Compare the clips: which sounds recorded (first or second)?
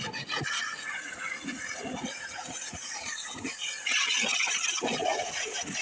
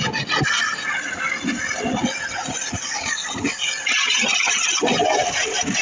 second